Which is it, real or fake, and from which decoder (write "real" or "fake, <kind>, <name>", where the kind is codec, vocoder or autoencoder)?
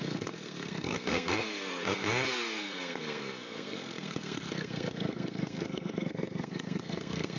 fake, codec, SNAC